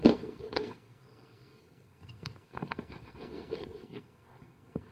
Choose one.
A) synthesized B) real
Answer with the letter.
A